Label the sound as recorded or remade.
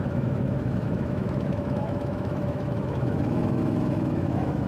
remade